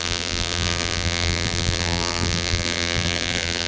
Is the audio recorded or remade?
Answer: remade